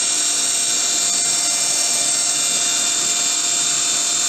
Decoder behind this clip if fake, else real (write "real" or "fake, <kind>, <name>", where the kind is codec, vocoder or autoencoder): real